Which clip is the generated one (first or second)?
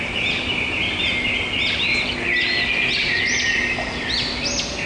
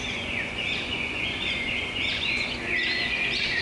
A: second